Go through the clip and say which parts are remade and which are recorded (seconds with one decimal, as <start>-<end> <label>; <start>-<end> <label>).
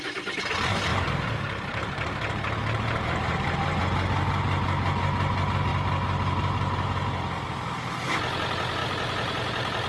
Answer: 0.0-0.9 recorded; 0.9-3.8 remade; 3.8-8.8 recorded; 8.8-9.9 remade